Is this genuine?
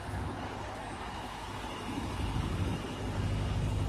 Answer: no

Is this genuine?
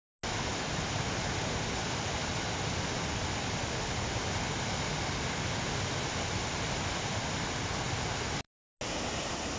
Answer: yes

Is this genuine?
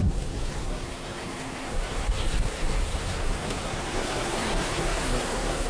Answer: no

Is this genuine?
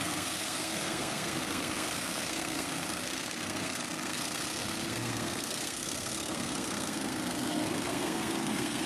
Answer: no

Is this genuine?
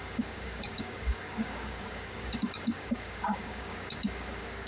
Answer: no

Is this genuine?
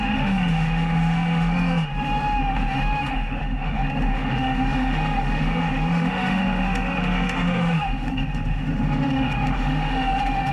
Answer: no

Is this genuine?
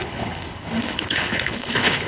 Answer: no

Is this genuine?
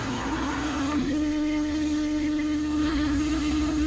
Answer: no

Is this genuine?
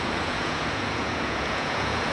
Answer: no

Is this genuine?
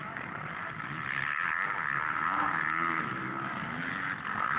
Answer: yes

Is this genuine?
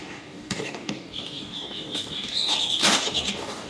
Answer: no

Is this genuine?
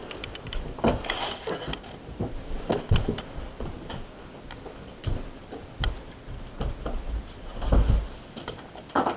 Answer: yes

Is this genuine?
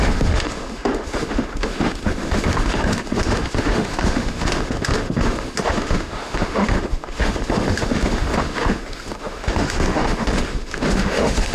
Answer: no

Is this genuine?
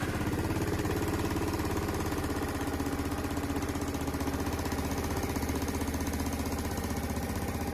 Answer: yes